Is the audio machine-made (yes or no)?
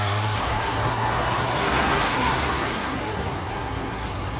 yes